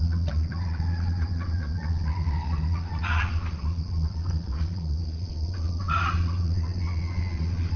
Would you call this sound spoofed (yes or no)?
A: yes